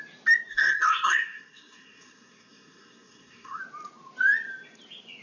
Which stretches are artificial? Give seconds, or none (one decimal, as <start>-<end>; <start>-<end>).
0.5-3.6